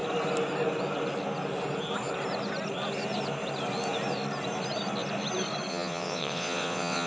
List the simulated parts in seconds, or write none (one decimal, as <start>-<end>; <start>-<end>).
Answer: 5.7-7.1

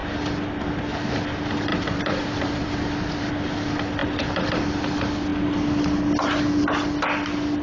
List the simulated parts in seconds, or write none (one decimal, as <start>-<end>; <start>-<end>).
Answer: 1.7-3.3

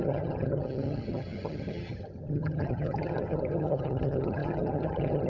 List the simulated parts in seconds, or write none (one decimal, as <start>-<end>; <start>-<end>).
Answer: 0.0-5.3

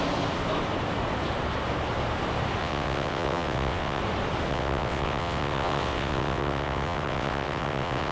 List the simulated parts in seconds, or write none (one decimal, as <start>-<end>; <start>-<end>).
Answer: 2.6-4.0; 4.5-8.1

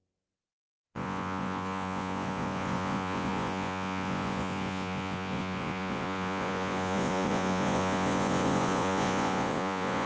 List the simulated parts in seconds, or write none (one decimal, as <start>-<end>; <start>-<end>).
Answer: 0.0-10.1